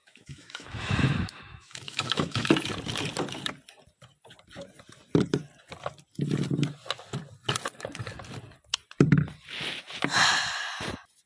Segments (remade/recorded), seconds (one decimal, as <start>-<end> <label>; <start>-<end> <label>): 0.0-2.5 remade; 2.5-11.3 recorded